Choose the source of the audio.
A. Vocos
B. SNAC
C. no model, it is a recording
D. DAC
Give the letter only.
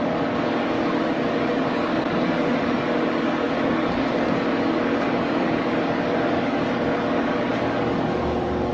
D